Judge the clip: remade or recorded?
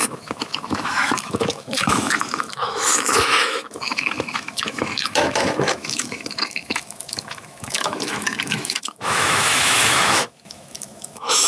remade